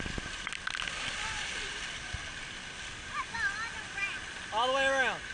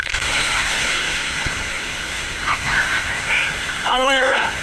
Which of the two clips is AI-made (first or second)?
second